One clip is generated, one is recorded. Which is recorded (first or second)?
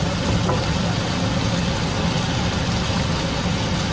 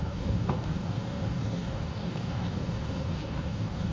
first